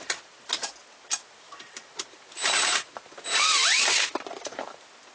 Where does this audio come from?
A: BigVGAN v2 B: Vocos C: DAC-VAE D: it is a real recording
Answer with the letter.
D